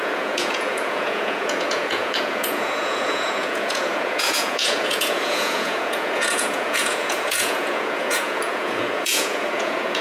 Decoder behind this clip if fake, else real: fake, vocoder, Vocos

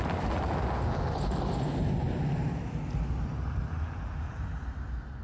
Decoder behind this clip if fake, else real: real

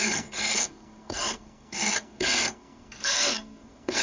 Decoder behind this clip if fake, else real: fake, codec, SNAC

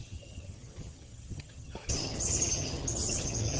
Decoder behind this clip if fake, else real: fake, vocoder, HiFi-GAN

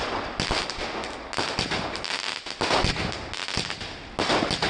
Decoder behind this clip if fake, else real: real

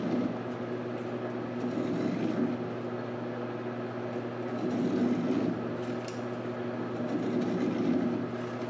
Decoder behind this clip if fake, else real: real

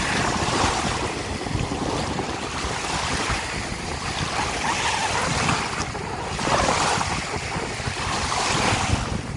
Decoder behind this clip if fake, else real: real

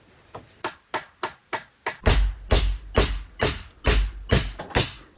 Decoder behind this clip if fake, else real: real